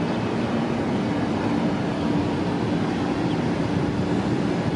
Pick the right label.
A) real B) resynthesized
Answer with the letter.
A